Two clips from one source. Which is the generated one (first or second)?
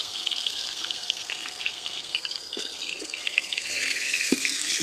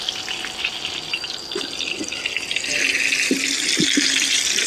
first